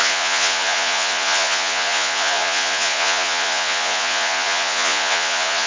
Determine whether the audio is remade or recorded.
remade